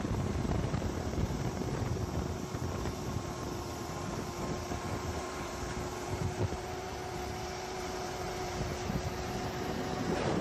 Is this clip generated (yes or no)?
yes